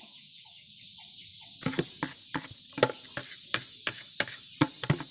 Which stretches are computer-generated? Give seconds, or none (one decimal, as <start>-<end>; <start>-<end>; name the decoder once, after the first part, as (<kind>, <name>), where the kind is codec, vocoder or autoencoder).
0.0-0.9 (autoencoder, DAC-VAE); 3.7-4.5